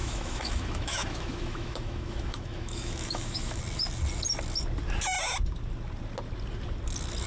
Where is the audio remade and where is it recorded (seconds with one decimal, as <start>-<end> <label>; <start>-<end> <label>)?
0.0-3.6 remade; 3.6-7.3 recorded